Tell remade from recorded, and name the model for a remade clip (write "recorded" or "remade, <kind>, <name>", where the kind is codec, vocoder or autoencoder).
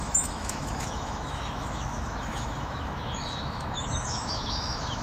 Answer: remade, autoencoder, DAC-VAE